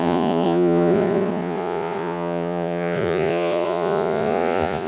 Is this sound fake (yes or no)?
yes